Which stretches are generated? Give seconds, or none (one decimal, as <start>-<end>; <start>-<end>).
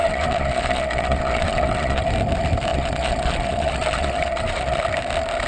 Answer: 0.0-2.0; 2.7-4.8